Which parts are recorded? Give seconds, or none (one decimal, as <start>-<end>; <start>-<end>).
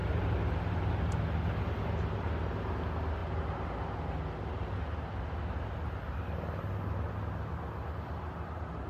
0.9-8.9